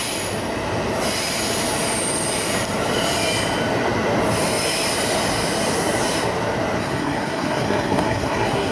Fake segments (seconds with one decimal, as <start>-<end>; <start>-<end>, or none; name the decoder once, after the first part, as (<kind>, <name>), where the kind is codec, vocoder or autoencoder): 6.8-8.7 (codec, SNAC)